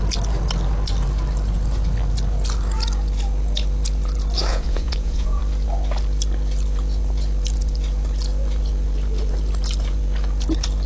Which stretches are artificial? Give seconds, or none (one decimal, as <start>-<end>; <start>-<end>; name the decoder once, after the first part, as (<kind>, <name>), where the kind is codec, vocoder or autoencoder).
4.5-5.4 (vocoder, Vocos)